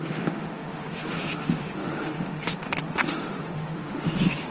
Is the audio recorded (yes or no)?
no